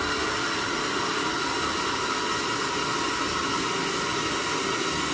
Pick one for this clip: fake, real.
real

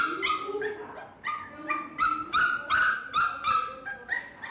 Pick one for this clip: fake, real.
real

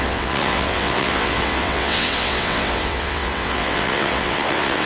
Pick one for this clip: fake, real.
fake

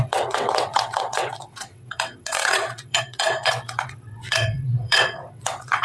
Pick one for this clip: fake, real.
fake